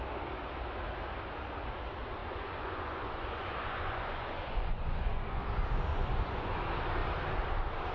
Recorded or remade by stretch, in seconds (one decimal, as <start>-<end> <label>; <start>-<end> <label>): 0.0-2.2 recorded; 2.2-5.4 remade; 5.4-5.9 recorded; 5.9-6.6 remade; 6.6-7.9 recorded